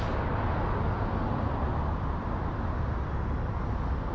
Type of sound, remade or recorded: recorded